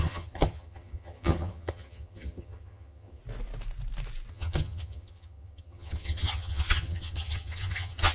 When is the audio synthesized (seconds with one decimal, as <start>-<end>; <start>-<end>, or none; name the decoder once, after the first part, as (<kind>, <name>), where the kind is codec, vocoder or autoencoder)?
0.0-3.2 (vocoder, HiFi-GAN); 4.3-8.1